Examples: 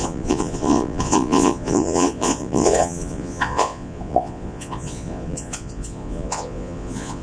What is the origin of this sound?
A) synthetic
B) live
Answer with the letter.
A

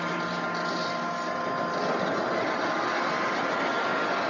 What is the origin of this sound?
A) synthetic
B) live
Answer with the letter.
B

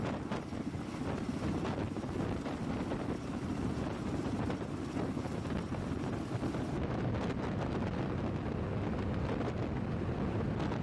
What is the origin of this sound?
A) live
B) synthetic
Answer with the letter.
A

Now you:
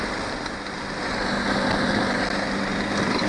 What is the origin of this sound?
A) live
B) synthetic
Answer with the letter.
A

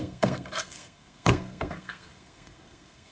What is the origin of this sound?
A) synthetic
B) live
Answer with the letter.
A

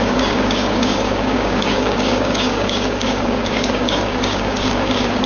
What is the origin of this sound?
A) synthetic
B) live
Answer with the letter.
A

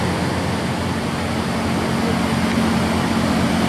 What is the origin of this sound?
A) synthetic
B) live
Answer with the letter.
B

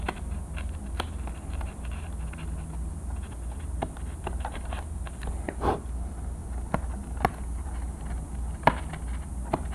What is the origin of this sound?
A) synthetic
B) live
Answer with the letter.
B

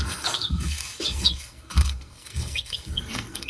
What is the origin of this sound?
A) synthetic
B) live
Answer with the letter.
A